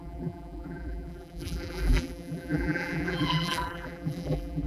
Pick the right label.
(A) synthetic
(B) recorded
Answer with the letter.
A